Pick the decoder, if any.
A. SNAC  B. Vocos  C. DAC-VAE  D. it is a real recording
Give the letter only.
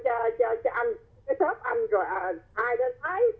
D